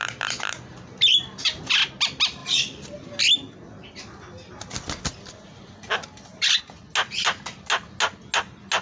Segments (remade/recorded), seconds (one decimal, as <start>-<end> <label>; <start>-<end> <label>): 0.0-8.8 recorded